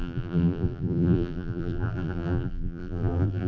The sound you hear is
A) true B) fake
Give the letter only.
B